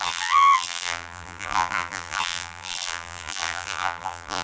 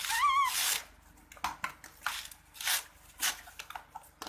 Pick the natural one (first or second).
second